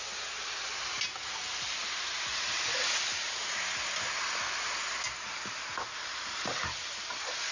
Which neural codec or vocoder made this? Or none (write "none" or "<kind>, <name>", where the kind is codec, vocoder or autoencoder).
none